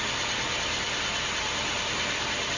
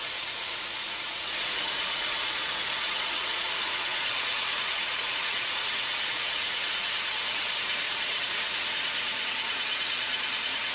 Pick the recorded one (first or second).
first